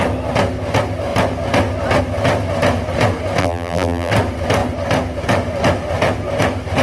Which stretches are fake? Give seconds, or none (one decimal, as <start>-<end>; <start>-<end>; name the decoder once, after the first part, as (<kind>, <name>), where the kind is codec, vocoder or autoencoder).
3.4-4.1 (vocoder, BigVGAN v2)